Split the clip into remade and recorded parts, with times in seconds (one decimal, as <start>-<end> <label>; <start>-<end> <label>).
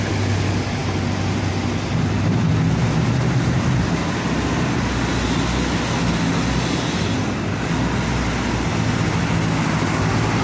0.0-10.4 recorded